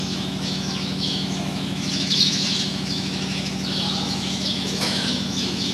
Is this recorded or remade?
remade